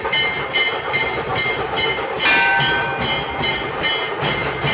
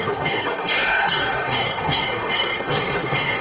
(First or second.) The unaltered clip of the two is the first